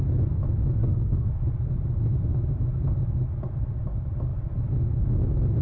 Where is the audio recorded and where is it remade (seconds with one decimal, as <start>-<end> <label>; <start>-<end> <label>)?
0.0-0.8 recorded; 0.8-1.3 remade; 1.3-5.6 recorded